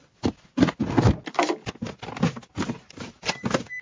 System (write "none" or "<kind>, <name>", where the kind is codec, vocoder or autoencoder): none